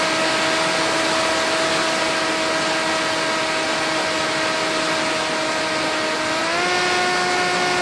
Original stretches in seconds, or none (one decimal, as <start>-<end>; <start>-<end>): 0.0-7.8